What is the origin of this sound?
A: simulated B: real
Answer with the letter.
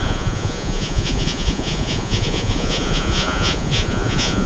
A